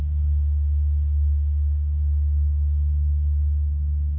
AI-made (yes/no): yes